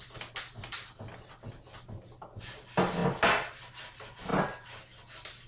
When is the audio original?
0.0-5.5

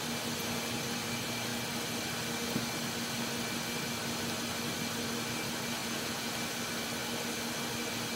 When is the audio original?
0.0-5.8; 6.3-8.2

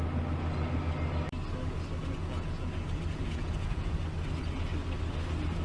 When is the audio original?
0.0-2.0; 2.7-3.1; 4.0-5.6

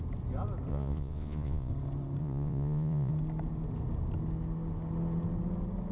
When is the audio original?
0.0-0.7; 1.7-2.2; 3.1-5.9

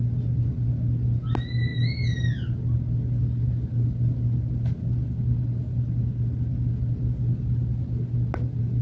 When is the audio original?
0.0-8.8